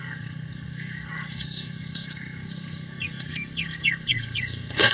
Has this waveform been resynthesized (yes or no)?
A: yes